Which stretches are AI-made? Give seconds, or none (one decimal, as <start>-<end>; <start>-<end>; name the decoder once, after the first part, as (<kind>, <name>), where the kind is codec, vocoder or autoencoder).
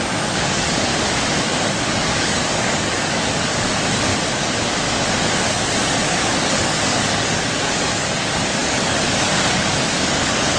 0.0-0.9 (codec, DAC); 1.4-4.1; 5.5-10.6